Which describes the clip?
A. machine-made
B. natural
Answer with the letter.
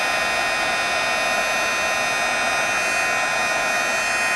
B